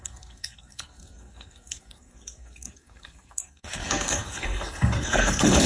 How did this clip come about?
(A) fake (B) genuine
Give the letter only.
A